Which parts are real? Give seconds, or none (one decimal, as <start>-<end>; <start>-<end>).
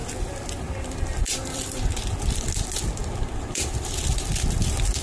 0.0-1.2; 1.8-3.0; 4.3-5.0